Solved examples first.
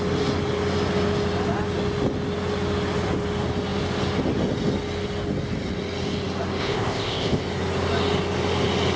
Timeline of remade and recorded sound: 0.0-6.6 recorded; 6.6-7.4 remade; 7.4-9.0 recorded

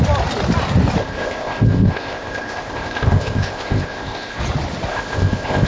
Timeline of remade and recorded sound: 0.0-1.0 recorded; 1.0-4.4 remade; 4.4-4.9 recorded; 4.9-5.7 remade

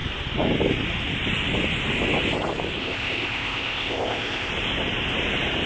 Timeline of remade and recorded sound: 0.0-2.8 recorded; 2.8-4.5 remade; 4.5-5.7 recorded

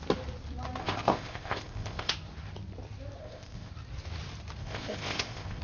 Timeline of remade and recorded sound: 0.0-0.8 recorded; 0.8-2.1 remade; 2.1-3.2 recorded; 3.2-3.7 remade; 3.7-4.6 recorded; 4.6-5.6 remade

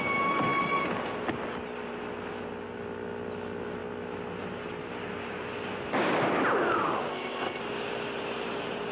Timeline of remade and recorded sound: 0.0-7.1 recorded; 7.1-7.6 remade; 7.6-8.9 recorded

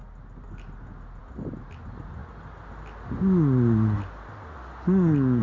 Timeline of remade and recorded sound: 0.0-5.4 recorded